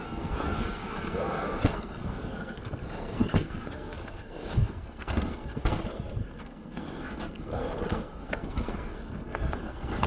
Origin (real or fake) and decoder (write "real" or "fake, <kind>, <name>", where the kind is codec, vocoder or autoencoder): fake, codec, SNAC